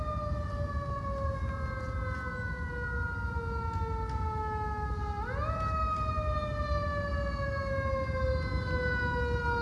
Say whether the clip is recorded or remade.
recorded